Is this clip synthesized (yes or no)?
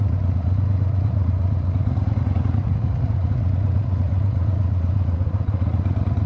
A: yes